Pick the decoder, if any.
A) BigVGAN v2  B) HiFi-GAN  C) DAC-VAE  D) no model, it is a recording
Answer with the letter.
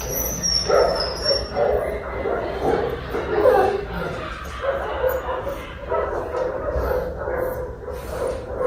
D